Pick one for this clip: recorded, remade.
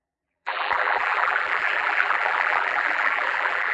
remade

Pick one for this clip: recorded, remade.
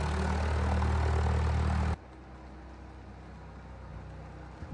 recorded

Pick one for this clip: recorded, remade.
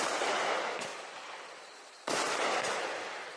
recorded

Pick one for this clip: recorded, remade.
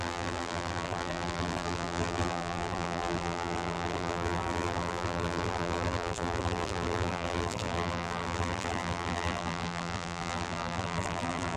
remade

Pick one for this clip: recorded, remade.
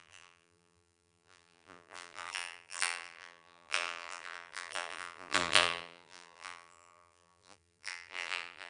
remade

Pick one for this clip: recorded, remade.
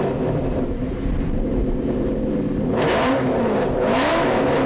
remade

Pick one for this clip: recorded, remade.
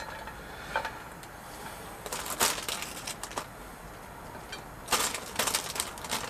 recorded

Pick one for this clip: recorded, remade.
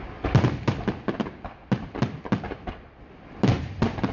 recorded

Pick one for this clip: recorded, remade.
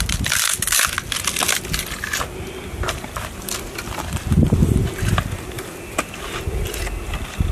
recorded